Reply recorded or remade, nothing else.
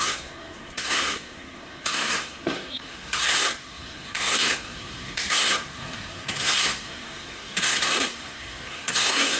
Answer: remade